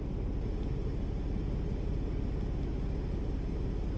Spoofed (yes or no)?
no